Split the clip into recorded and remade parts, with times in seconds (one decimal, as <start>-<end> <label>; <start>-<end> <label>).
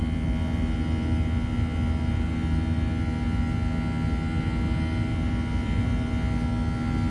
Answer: 0.0-7.1 recorded